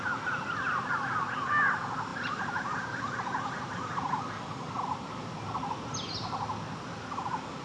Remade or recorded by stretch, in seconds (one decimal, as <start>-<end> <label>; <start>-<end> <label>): 0.0-2.1 recorded; 2.1-4.8 remade; 4.8-7.6 recorded